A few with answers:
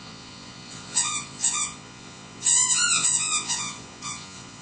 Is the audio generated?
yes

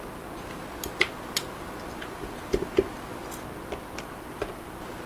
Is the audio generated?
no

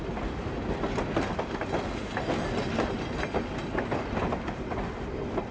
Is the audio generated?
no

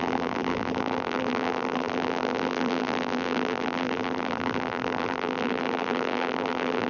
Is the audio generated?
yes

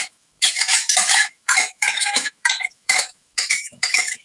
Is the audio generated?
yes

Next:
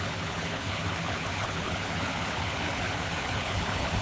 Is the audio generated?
yes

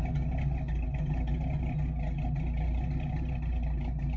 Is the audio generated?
no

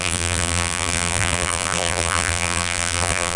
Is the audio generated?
yes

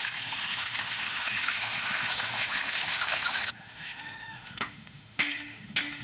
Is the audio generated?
yes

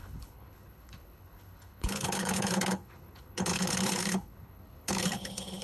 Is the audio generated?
yes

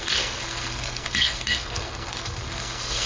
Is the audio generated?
yes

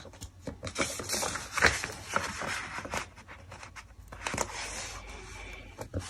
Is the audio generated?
no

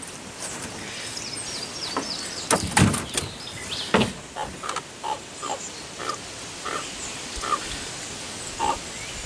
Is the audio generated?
no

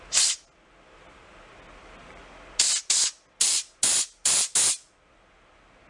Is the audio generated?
no